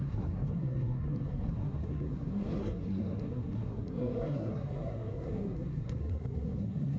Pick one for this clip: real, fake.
fake